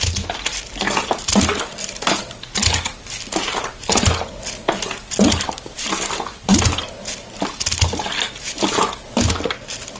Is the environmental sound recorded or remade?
recorded